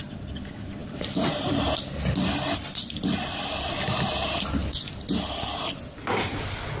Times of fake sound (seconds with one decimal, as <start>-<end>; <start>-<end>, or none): none

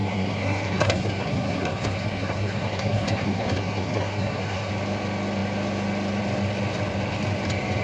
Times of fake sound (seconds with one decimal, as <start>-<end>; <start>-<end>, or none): 0.0-4.7

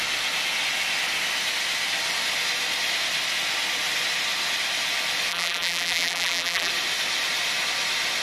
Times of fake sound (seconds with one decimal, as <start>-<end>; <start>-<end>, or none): 5.3-6.7

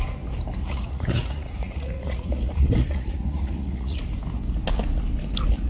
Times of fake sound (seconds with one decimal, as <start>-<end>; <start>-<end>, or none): 0.6-4.0

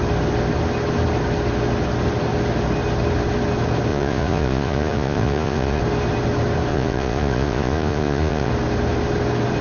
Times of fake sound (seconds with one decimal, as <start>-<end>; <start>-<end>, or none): 3.9-5.8; 6.7-8.5

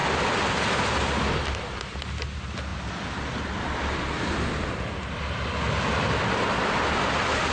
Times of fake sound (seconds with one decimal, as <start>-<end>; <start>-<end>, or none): none

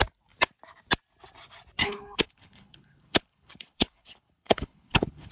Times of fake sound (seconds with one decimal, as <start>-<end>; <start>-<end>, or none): 1.8-5.3